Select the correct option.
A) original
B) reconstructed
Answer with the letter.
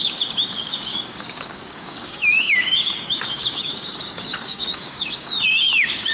B